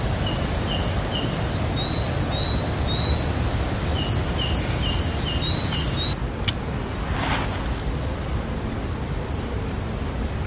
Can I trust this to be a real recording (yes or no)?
yes